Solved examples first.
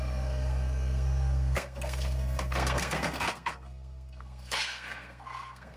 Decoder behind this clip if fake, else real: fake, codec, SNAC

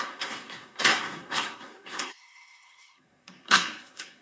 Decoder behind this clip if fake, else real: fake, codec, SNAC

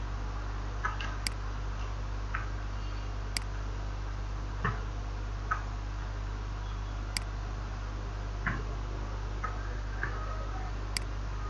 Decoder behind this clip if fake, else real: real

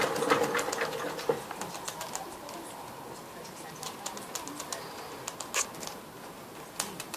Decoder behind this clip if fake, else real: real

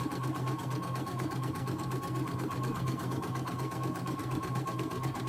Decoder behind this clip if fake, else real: fake, codec, SNAC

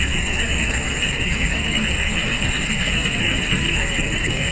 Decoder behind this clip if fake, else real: fake, codec, SNAC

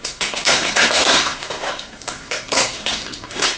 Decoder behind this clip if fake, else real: fake, codec, SNAC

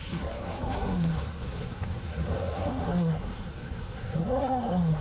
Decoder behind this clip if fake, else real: fake, codec, SNAC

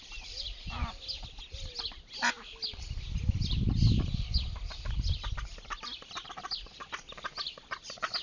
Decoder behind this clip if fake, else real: real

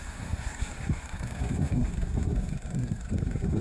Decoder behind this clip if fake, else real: fake, codec, SNAC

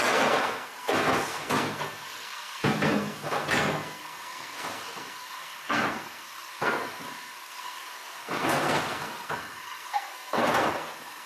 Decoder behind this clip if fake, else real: fake, codec, SNAC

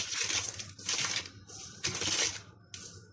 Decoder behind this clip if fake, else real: real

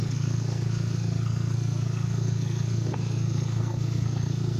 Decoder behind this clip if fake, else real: fake, codec, SNAC